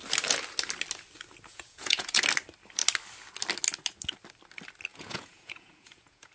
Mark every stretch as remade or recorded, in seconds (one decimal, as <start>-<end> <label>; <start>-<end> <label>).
0.0-1.5 recorded; 1.5-2.2 remade; 2.2-4.9 recorded; 4.9-6.3 remade

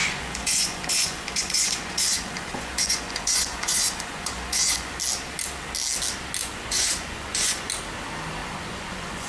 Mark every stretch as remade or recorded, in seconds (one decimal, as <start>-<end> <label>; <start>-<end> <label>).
0.0-5.0 remade; 5.0-6.4 recorded; 6.4-7.7 remade; 7.7-8.4 recorded; 8.4-9.3 remade

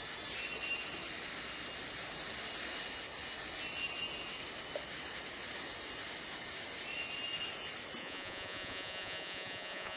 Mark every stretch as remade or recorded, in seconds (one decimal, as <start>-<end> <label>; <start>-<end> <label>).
0.0-8.0 recorded; 8.0-10.0 remade

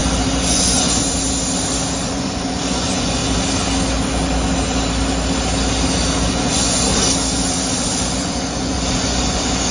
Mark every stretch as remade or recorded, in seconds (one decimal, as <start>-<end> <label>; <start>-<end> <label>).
0.0-0.5 recorded; 0.5-1.0 remade; 1.0-2.0 recorded; 2.0-3.2 remade; 3.2-6.3 recorded; 6.3-6.9 remade; 6.9-7.7 recorded; 7.7-9.7 remade

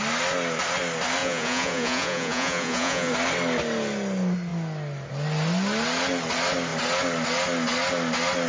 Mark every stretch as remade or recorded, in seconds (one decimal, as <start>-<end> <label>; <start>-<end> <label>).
0.0-1.2 recorded; 1.2-3.1 remade; 3.1-8.5 recorded

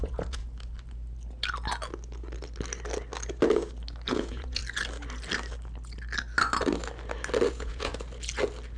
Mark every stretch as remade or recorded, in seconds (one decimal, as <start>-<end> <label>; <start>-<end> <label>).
0.0-0.4 remade; 0.4-4.1 recorded; 4.1-4.6 remade; 4.6-7.5 recorded; 7.5-7.9 remade; 7.9-8.8 recorded

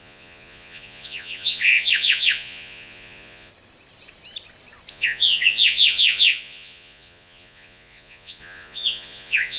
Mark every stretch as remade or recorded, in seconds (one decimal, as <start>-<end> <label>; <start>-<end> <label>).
0.0-3.5 remade; 3.5-4.9 recorded; 4.9-9.6 remade